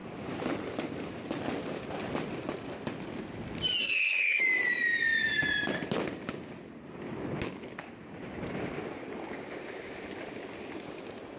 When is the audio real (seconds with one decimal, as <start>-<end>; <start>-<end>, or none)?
0.0-3.8; 4.4-11.4